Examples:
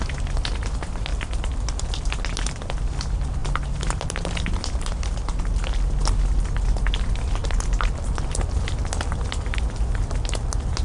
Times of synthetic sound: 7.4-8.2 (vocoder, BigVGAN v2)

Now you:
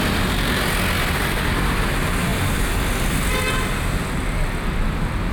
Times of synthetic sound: none